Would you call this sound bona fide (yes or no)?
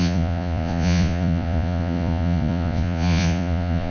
no